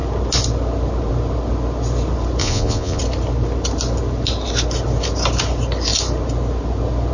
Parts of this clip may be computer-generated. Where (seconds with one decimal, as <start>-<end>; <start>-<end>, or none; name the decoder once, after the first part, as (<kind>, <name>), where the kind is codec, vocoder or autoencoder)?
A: 2.4-3.0 (vocoder, Vocos)